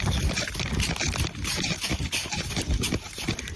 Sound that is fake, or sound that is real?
real